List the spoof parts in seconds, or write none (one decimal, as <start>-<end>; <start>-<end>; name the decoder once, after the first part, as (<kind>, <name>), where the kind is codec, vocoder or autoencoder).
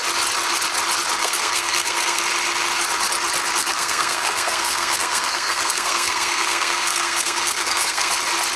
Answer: 1.2-2.2 (codec, SNAC); 3.6-8.1